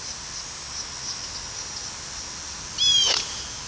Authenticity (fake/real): real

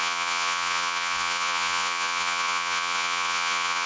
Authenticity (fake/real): fake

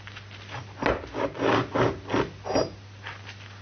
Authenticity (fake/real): real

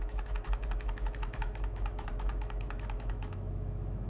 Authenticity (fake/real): fake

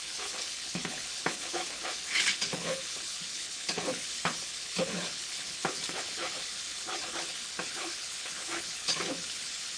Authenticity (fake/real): fake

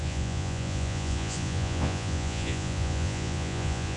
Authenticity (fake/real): fake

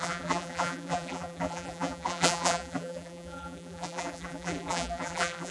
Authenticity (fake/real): fake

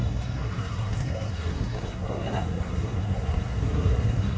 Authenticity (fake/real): fake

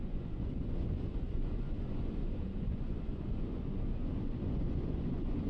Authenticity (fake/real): fake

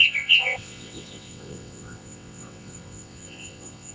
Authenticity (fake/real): fake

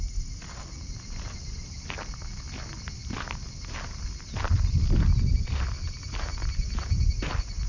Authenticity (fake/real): real